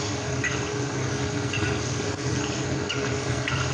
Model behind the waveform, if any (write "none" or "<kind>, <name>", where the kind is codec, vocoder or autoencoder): codec, SNAC